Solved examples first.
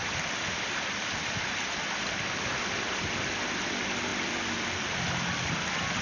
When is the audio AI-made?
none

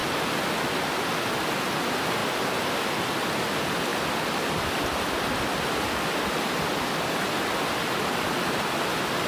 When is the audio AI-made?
none

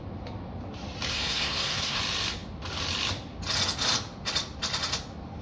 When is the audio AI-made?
1.1-2.0 (codec, SNAC)